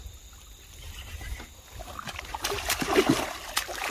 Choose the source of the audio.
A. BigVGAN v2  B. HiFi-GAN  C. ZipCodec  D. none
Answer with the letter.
D